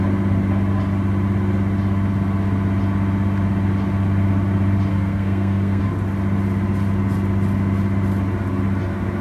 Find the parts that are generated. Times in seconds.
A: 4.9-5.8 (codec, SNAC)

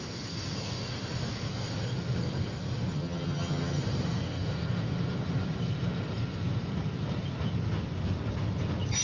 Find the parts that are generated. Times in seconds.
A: 2.9-3.8 (vocoder, HiFi-GAN)

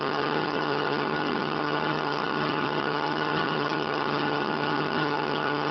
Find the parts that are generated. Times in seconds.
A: 0.0-5.7 (vocoder, HiFi-GAN)

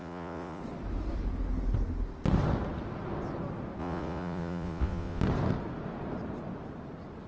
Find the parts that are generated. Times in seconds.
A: 0.0-0.6 (vocoder, Vocos); 3.8-5.2